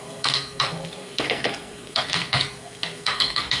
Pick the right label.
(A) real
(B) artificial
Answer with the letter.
B